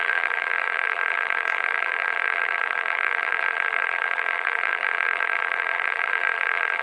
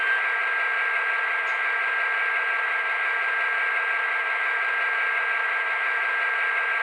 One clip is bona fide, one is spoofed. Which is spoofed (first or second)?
first